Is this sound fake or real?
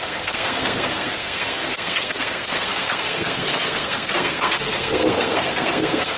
fake